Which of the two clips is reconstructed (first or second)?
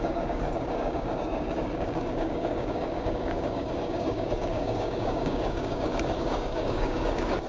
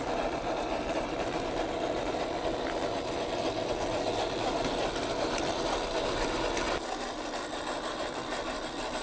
first